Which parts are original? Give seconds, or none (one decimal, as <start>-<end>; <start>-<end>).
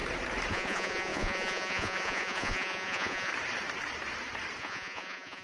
0.0-0.5; 3.3-4.6